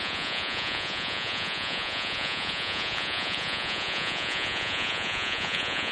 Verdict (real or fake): fake